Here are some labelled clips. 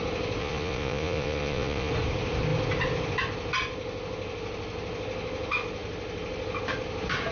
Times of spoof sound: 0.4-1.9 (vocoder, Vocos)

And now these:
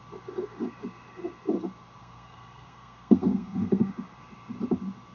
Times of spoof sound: 2.0-3.9 (codec, SNAC)

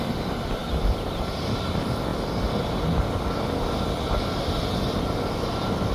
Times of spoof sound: 0.0-0.6 (vocoder, BigVGAN v2); 1.6-2.1; 3.4-5.9

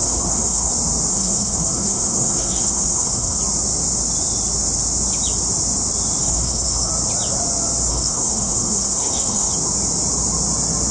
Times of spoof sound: 0.0-0.7 (codec, SNAC); 1.1-3.4; 6.2-6.9; 7.9-9.5

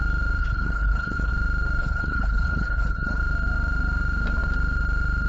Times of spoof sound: 0.4-1.3 (codec, HILCodec); 1.8-3.2

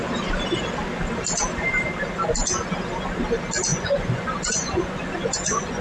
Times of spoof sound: 3.7-5.8 (vocoder, Vocos)

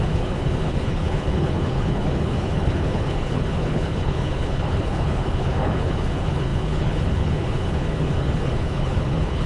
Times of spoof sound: 0.0-9.5 (codec, HILCodec)

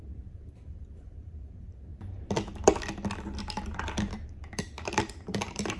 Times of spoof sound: 0.0-1.9 (vocoder, BigVGAN v2); 3.6-5.8